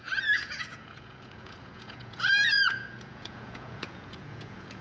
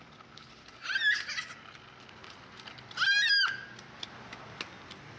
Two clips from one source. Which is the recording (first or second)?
second